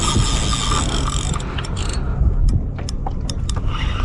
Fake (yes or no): no